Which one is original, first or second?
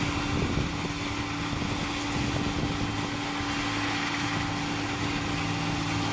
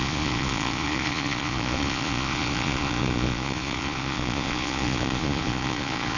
first